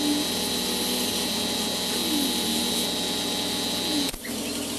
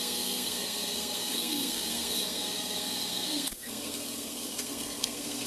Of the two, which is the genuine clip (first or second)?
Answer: first